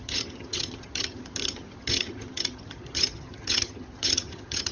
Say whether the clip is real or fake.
fake